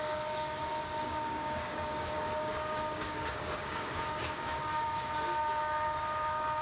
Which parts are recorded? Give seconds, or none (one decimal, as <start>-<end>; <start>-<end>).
none